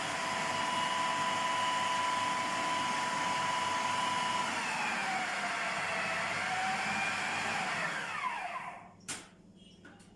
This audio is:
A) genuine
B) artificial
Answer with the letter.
A